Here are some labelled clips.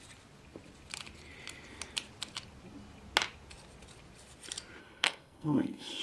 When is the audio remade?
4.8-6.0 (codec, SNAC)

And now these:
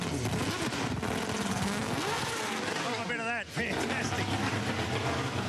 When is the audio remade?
1.5-2.2 (codec, SNAC)

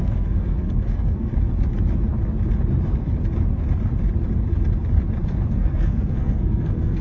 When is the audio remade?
0.0-1.3 (codec, SNAC); 5.5-7.0